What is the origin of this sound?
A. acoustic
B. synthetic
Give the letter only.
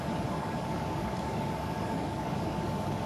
B